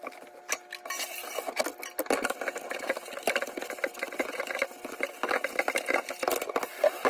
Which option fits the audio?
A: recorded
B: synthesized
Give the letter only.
A